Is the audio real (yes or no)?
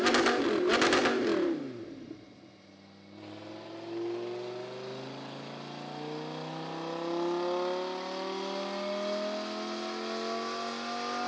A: yes